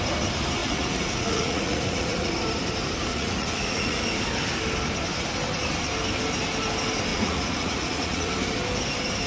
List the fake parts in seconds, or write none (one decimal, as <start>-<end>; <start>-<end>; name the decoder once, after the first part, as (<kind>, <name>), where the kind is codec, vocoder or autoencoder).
0.6-2.3 (vocoder, Vocos); 3.1-4.0; 7.1-8.3